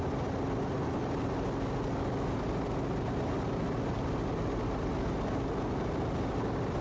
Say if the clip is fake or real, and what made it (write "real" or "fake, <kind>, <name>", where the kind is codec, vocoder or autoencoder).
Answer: real